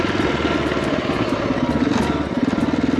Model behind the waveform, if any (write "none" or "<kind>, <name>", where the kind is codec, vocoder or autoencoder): none